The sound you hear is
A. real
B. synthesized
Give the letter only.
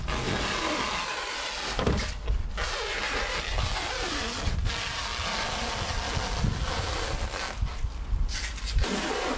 A